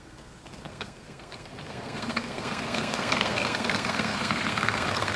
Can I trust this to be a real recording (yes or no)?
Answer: no